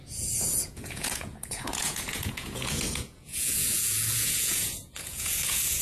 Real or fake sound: fake